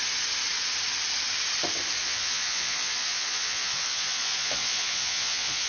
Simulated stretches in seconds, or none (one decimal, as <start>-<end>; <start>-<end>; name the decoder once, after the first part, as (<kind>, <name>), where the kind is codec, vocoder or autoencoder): 2.0-5.7 (vocoder, Vocos)